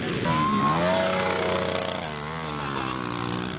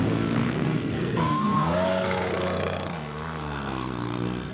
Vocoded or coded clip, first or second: second